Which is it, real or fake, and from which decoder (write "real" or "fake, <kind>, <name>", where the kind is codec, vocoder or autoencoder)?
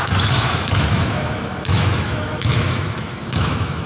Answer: fake, autoencoder, DAC-VAE